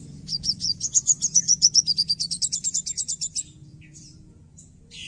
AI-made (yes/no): yes